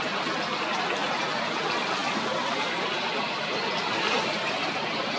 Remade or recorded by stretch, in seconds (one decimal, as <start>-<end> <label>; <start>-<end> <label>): 0.0-5.2 recorded